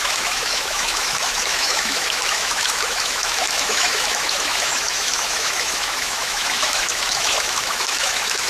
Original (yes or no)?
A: no